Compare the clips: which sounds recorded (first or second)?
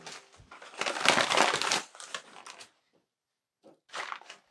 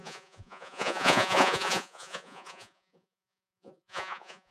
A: first